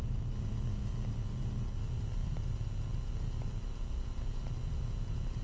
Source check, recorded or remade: recorded